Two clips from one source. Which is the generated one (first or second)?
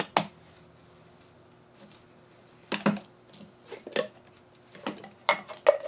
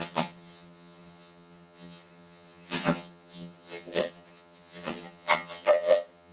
second